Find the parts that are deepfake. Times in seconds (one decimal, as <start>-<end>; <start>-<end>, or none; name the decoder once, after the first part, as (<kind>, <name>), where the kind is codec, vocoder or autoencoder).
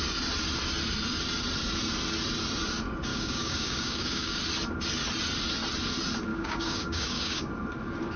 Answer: 3.1-4.4 (codec, DAC); 6.3-7.5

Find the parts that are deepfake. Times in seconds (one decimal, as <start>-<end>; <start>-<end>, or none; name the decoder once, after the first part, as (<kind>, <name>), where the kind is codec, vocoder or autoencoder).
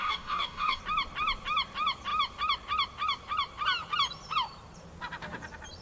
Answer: 0.0-0.8 (codec, DAC)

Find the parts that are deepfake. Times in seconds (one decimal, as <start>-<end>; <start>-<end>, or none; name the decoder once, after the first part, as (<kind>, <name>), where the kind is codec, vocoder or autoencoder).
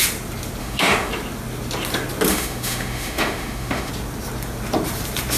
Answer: 0.6-1.1 (autoencoder, DAC-VAE); 2.3-3.9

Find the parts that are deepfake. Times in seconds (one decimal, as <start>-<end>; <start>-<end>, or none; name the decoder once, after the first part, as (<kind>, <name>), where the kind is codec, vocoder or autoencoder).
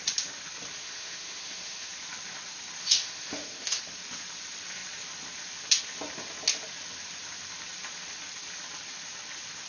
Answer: 0.8-1.9 (autoencoder, DAC-VAE); 2.8-3.8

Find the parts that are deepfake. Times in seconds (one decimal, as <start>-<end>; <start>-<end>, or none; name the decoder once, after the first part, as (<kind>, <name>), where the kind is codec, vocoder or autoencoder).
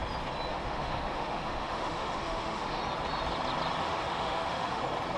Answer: 0.5-2.8 (autoencoder, DAC-VAE); 3.8-4.8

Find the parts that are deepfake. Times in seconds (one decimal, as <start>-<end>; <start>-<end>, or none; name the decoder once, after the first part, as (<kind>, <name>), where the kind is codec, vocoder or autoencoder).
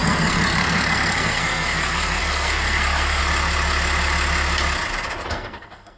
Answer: 0.0-3.2 (codec, SNAC); 5.3-6.0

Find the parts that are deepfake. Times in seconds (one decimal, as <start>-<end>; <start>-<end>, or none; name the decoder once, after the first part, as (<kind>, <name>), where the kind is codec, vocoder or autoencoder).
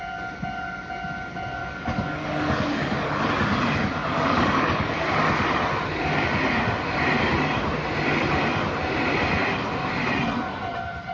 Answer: 1.6-3.2 (codec, DAC); 4.0-4.9